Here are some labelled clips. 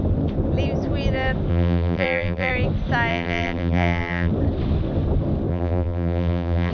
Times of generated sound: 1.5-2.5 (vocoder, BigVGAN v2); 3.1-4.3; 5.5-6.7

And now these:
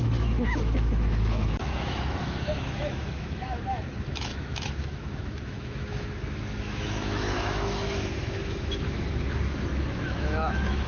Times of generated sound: 0.0-10.9 (autoencoder, DAC-VAE)

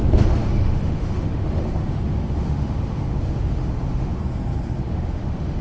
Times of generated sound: 0.0-4.2 (autoencoder, DAC-VAE); 4.8-5.6

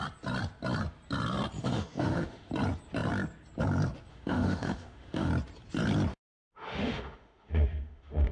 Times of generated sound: 1.6-2.5 (autoencoder, DAC-VAE); 4.1-5.3; 6.1-8.3